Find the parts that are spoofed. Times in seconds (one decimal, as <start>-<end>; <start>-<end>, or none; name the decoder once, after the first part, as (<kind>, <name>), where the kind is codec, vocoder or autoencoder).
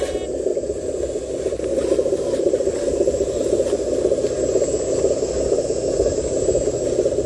0.5-1.0 (vocoder, BigVGAN v2); 1.8-3.4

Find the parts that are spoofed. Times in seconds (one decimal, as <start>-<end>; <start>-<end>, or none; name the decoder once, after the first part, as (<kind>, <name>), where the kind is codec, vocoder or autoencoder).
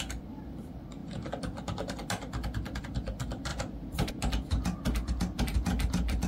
3.5-4.1 (vocoder, BigVGAN v2)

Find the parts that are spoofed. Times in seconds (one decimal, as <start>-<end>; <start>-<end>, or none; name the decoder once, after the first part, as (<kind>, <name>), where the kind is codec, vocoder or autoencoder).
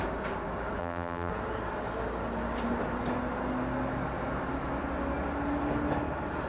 0.8-1.3 (vocoder, BigVGAN v2)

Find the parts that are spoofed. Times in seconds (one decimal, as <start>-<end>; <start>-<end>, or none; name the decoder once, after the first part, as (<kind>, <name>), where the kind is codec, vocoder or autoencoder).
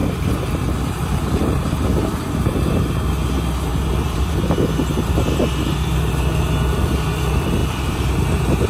0.0-3.0 (vocoder, BigVGAN v2); 3.7-4.3; 7.6-8.1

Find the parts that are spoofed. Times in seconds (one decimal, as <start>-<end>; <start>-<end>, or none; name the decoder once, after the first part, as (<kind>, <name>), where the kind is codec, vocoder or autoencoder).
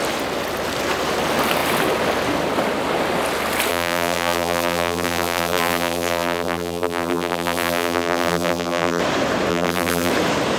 3.7-9.0 (vocoder, BigVGAN v2); 9.5-10.1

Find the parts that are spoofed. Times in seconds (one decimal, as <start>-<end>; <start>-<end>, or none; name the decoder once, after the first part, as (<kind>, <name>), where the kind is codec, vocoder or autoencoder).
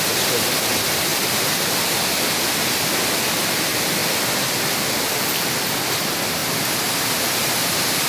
1.1-2.2 (vocoder, BigVGAN v2); 4.0-5.4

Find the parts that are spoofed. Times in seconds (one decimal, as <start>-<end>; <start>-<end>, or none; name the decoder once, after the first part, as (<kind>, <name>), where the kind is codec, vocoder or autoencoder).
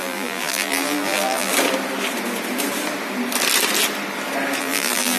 0.0-1.5 (vocoder, BigVGAN v2); 4.6-5.2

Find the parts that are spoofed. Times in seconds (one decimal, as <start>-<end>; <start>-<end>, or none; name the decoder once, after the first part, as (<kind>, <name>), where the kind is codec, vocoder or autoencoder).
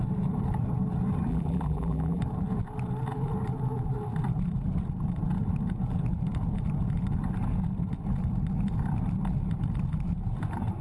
1.3-2.2 (vocoder, BigVGAN v2)